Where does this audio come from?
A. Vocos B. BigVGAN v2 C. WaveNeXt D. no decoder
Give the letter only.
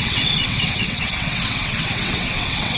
C